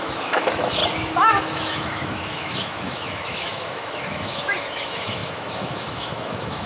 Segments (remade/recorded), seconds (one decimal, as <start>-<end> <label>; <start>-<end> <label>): 0.0-0.8 remade; 0.8-1.3 recorded; 1.3-6.7 remade